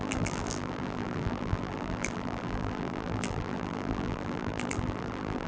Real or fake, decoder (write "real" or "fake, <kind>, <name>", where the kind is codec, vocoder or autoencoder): fake, vocoder, BigVGAN v2